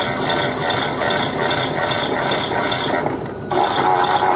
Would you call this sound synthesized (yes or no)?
no